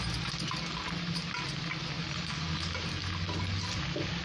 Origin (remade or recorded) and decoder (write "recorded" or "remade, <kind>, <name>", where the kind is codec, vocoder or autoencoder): recorded